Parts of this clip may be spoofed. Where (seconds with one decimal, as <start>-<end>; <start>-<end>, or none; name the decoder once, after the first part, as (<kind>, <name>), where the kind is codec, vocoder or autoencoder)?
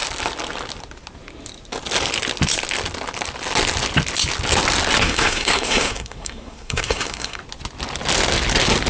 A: 5.0-7.4 (codec, SNAC)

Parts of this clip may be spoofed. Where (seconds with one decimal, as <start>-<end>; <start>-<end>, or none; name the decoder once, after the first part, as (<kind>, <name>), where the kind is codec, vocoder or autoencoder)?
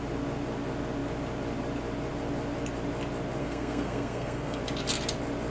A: 3.4-4.6 (codec, SNAC)